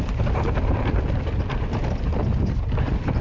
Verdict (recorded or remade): recorded